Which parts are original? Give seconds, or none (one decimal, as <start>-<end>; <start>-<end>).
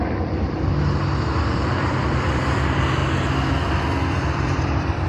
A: 0.7-1.4; 3.0-4.1